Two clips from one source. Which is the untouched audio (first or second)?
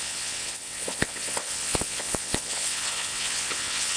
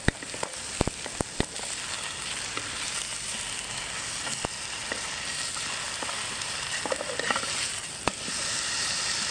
second